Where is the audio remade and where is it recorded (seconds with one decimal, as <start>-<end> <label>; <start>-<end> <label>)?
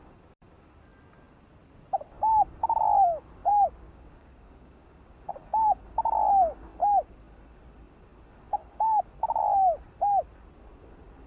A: 0.0-3.5 recorded; 3.5-5.3 remade; 5.3-11.3 recorded